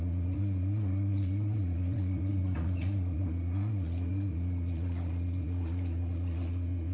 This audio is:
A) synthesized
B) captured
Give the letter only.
A